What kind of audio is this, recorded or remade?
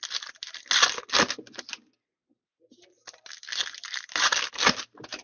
recorded